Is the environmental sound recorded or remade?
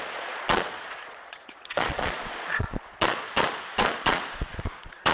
remade